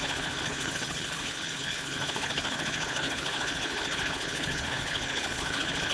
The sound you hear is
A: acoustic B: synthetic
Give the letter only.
B